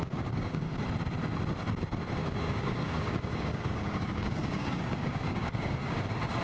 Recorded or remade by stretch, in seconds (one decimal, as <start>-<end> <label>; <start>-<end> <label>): 0.0-0.8 remade; 0.8-2.2 recorded; 2.2-6.0 remade; 6.0-6.4 recorded